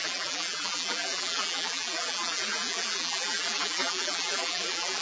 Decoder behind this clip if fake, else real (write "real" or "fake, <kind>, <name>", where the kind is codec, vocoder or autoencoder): fake, vocoder, BigVGAN v2